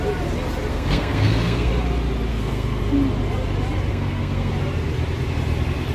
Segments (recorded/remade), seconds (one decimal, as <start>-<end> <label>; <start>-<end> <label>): 0.0-0.7 recorded; 0.7-1.7 remade; 1.7-2.3 recorded; 2.3-2.8 remade; 2.8-3.9 recorded; 3.9-4.5 remade; 4.5-5.9 recorded